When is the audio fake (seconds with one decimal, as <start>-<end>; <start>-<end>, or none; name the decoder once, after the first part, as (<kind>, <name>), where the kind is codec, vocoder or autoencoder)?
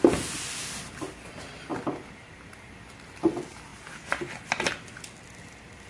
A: none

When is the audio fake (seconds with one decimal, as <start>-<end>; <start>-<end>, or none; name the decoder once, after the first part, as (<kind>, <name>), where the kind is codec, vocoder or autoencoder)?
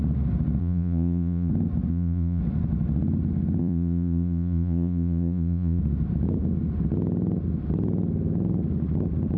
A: 0.6-1.5 (vocoder, Vocos); 1.9-2.4; 3.6-5.8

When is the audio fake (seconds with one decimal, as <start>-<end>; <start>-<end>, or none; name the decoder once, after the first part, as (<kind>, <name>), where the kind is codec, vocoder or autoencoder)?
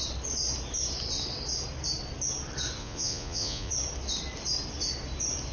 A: 2.8-3.7 (vocoder, Vocos)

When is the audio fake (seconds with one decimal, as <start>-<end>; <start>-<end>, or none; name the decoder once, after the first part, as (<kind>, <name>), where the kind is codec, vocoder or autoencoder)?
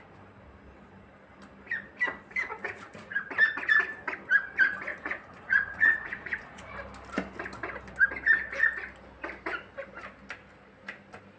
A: 2.5-3.3 (vocoder, Vocos); 4.9-6.7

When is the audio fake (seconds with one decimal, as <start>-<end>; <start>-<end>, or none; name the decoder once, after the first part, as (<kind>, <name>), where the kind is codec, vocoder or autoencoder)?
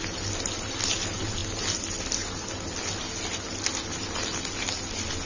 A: none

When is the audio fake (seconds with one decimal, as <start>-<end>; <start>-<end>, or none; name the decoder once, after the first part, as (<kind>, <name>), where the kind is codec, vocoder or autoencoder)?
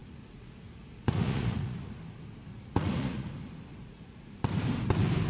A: 0.0-2.0 (vocoder, Vocos); 2.5-3.3; 3.7-4.3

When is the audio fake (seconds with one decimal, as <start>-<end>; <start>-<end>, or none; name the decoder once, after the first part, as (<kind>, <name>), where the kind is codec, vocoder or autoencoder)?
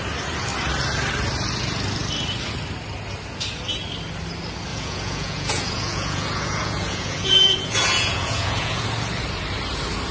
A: 4.7-8.8 (vocoder, Vocos)